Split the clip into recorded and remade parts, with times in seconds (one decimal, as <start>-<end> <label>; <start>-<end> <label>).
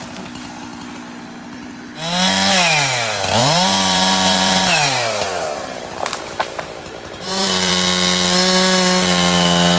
0.0-3.4 recorded; 3.4-7.7 remade; 7.7-9.8 recorded